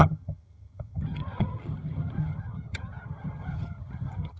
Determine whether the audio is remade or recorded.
remade